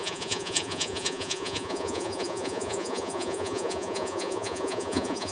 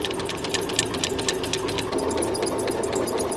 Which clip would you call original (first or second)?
second